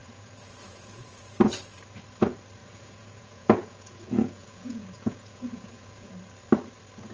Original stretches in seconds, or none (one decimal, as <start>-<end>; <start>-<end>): 1.2-2.6; 6.1-7.1